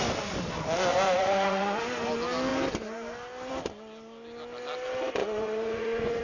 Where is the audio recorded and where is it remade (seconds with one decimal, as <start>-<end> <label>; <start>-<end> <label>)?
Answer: 0.0-0.9 recorded; 0.9-1.8 remade; 1.8-5.2 recorded; 5.2-6.2 remade